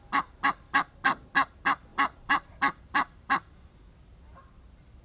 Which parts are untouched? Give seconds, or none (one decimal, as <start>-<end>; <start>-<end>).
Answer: 0.0-1.9